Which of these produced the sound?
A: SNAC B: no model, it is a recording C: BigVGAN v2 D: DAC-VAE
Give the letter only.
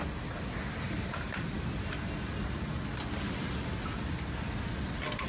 B